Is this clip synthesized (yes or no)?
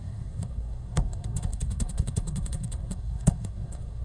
yes